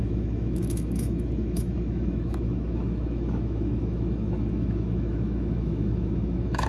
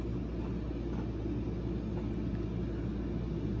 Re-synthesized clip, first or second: first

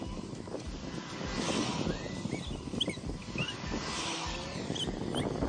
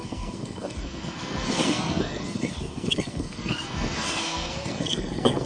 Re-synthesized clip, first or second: second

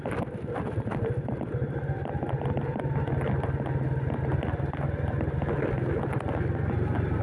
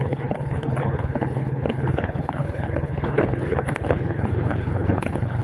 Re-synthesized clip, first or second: second